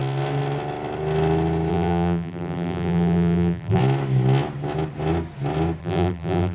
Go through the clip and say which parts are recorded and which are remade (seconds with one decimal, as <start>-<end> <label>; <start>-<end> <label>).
0.0-1.7 recorded; 1.7-3.8 remade; 3.8-5.8 recorded; 5.8-6.5 remade